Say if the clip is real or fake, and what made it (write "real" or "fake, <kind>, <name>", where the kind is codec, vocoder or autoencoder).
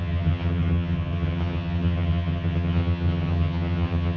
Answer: fake, vocoder, HiFi-GAN